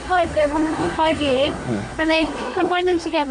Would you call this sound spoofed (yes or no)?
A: yes